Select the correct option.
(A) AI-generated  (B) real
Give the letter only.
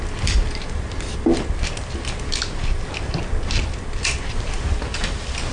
B